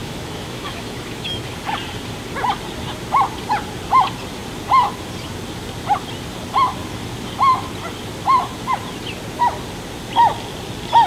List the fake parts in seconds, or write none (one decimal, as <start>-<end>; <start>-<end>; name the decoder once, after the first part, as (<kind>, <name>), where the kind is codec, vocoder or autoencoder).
0.0-1.4 (autoencoder, DAC-VAE)